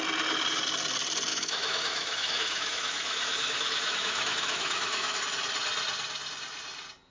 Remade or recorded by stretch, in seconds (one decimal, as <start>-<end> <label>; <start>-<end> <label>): 0.0-1.3 recorded; 1.3-5.2 remade; 5.2-7.1 recorded